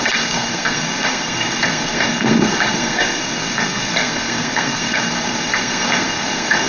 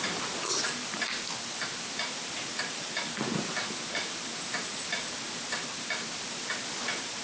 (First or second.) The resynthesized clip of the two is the first